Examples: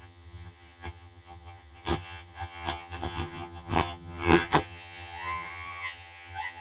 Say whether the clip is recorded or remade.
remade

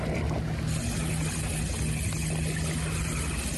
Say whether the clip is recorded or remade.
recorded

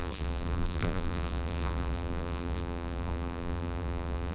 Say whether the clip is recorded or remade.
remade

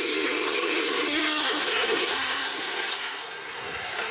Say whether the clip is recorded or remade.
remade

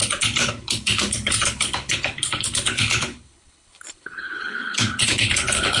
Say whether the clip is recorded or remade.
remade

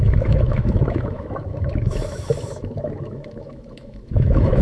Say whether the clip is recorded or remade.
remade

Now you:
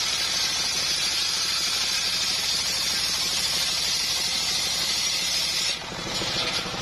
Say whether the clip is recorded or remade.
remade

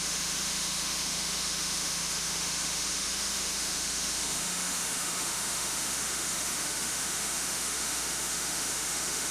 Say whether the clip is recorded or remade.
remade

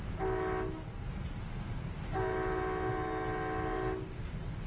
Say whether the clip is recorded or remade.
recorded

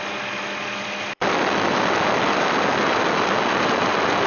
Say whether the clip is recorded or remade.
recorded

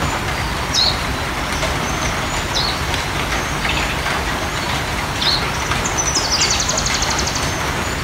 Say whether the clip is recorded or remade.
recorded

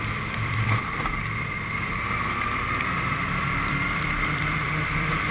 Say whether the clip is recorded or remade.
remade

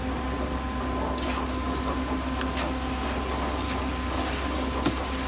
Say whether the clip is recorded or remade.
recorded